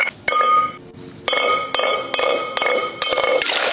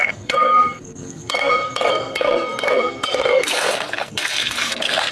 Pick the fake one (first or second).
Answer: second